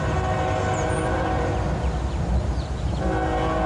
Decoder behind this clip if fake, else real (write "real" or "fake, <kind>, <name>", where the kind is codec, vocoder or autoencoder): real